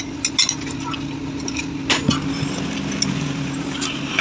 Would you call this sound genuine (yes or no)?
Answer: yes